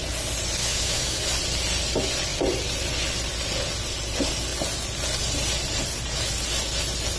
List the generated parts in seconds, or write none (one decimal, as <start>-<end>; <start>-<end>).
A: 0.6-1.2